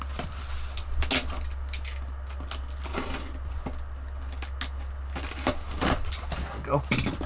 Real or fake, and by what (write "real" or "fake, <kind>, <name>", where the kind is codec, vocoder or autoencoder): real